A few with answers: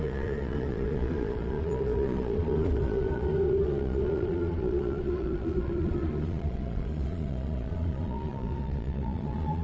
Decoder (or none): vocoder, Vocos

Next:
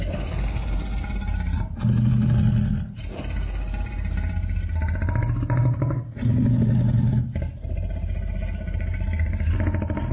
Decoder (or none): none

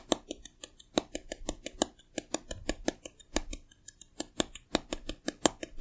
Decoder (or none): none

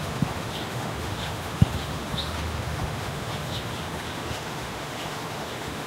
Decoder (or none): autoencoder, DAC-VAE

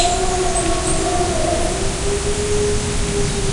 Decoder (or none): none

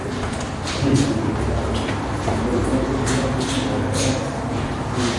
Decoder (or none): none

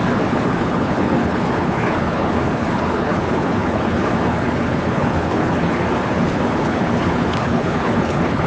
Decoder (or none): codec, HILCodec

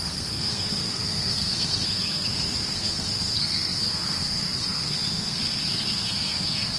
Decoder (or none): codec, SNAC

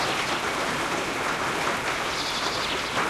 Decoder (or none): none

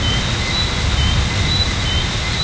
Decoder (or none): none